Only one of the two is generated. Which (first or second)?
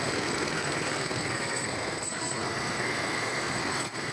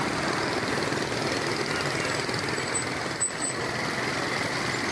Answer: first